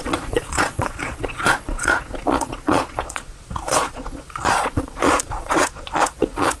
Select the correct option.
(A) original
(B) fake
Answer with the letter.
B